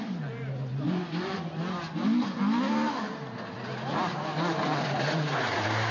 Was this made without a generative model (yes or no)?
yes